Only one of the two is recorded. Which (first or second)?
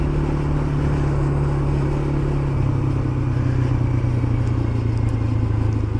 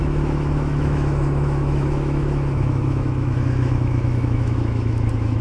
first